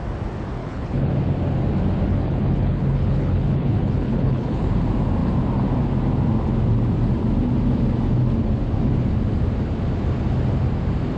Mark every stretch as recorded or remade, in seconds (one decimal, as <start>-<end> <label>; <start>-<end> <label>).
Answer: 0.0-0.6 recorded; 0.6-1.1 remade; 1.1-2.1 recorded; 2.1-4.7 remade; 4.7-11.2 recorded